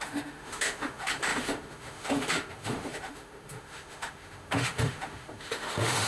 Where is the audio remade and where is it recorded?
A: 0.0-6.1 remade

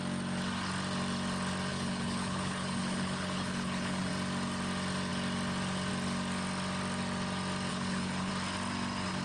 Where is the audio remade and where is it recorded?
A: 0.0-1.7 recorded; 1.7-4.1 remade; 4.1-7.7 recorded; 7.7-8.3 remade; 8.3-9.2 recorded